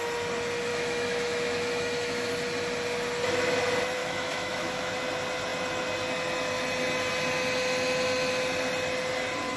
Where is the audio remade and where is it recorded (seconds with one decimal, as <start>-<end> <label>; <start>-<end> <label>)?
0.0-0.7 recorded; 0.7-2.3 remade; 2.3-4.0 recorded; 4.0-4.9 remade; 4.9-9.6 recorded